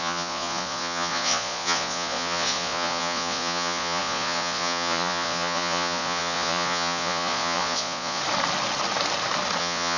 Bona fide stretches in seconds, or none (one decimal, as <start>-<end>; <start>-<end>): 8.2-9.6